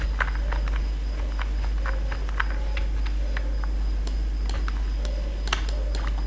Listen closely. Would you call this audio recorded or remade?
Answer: recorded